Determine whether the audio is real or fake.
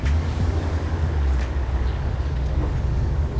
fake